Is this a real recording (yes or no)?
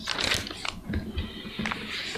yes